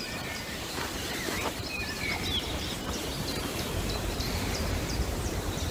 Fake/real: fake